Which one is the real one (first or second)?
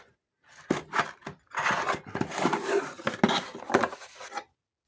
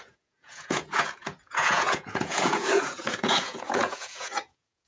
first